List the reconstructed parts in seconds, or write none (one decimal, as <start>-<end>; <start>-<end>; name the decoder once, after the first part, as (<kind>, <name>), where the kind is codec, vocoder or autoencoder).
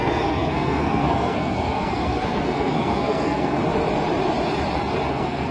0.0-3.6 (codec, SNAC); 5.1-5.5